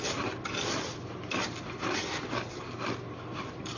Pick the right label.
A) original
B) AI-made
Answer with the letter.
A